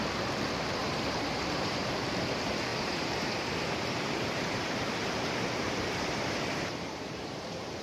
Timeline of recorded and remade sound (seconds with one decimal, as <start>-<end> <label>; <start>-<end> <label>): 0.0-0.8 recorded; 0.8-1.9 remade; 1.9-2.7 recorded; 2.7-7.8 remade